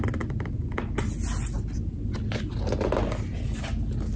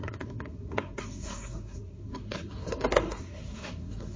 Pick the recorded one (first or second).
first